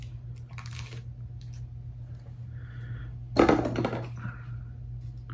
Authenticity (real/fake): real